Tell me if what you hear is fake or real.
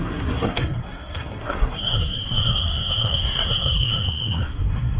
fake